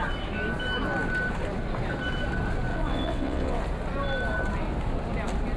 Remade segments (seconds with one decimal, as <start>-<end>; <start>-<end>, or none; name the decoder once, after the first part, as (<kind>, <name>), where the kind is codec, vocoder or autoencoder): 2.7-3.6 (vocoder, WaveNeXt)